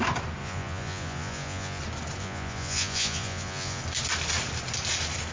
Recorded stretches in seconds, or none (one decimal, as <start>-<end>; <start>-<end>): 0.0-0.4; 1.8-2.2; 3.8-5.3